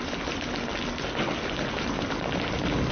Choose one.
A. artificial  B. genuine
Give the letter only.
B